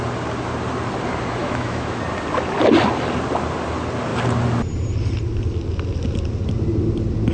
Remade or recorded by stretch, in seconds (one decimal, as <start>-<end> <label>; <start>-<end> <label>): 0.0-1.4 recorded; 1.4-2.0 remade; 2.0-7.3 recorded